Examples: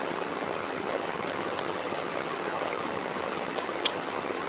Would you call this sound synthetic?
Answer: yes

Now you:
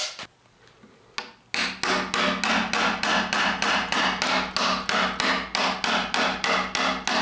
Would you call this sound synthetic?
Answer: no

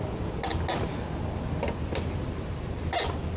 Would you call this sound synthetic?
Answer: no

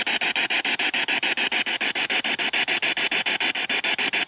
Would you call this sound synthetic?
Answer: no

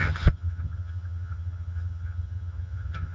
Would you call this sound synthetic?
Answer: yes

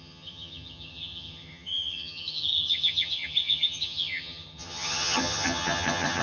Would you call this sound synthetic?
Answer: yes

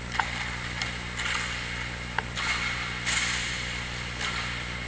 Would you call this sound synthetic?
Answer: no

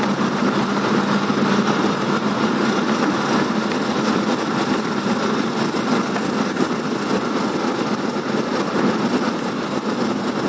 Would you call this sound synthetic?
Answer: no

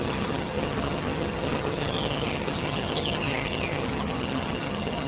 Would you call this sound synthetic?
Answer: yes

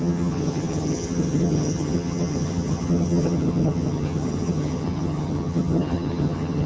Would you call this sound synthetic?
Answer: yes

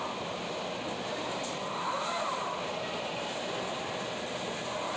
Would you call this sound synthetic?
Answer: no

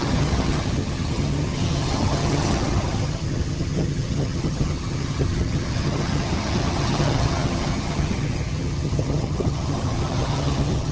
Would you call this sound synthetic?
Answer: yes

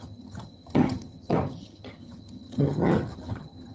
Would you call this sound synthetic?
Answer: yes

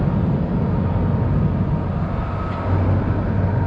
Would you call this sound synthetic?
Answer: no